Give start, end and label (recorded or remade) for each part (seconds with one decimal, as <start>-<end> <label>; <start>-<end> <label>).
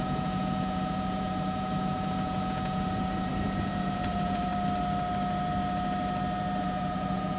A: 0.0-4.5 remade; 4.5-6.6 recorded; 6.6-7.4 remade